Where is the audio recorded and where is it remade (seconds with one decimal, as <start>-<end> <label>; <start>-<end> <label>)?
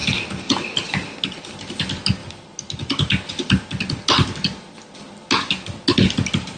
0.0-6.6 recorded